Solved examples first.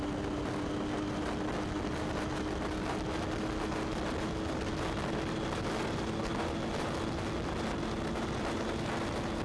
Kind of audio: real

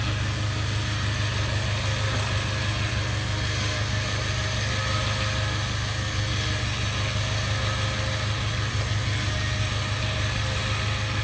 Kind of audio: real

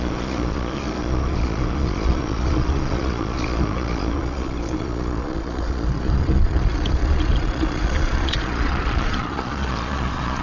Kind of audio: fake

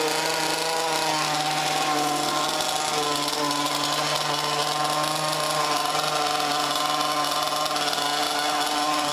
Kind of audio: real